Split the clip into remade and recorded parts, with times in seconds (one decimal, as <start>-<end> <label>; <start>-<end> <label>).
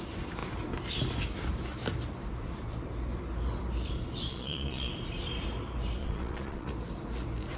0.0-4.3 recorded; 4.3-4.9 remade; 4.9-6.0 recorded; 6.0-6.7 remade; 6.7-7.6 recorded